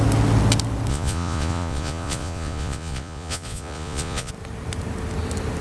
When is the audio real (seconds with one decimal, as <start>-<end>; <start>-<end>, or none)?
0.0-0.9; 4.3-5.6